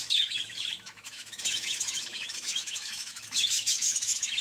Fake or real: fake